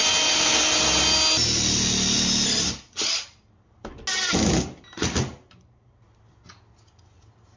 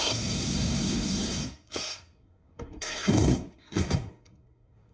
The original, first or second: first